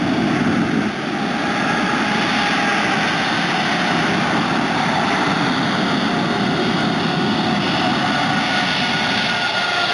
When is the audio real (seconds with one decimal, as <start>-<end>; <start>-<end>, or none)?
0.0-9.9